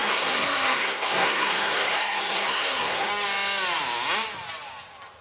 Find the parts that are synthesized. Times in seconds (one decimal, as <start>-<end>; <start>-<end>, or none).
0.0-3.1

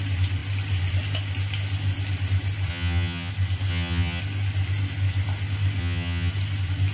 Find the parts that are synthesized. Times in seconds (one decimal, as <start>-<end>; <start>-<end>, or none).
2.7-3.3; 3.7-4.2; 5.8-6.3

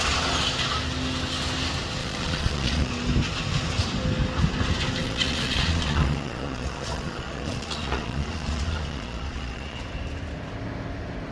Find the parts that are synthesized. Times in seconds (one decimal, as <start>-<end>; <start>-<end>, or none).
2.0-2.9; 5.0-9.8

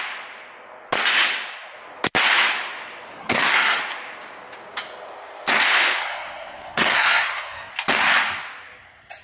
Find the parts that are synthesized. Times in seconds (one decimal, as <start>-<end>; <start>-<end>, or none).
3.1-3.8; 6.0-7.7

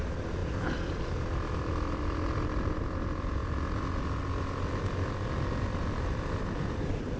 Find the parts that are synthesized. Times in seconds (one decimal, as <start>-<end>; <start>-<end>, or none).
0.0-3.4; 6.4-7.2

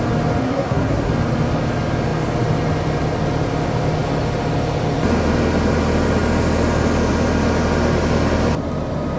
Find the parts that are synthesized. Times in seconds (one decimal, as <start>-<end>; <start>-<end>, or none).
0.4-1.1